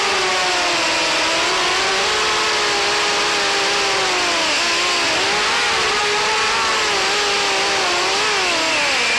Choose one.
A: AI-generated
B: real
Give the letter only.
B